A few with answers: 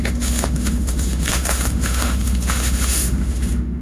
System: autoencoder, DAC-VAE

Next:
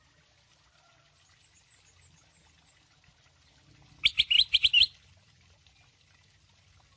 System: none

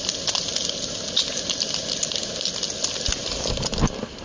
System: none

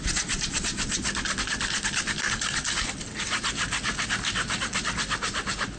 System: none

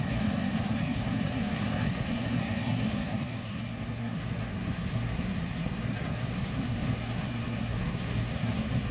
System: codec, SNAC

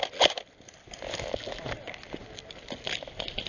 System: none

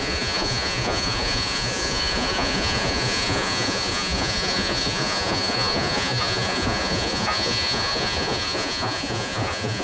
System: vocoder, Vocos